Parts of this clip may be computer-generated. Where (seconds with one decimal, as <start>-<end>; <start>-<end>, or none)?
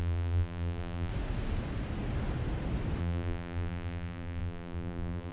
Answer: 0.0-1.1; 3.0-5.3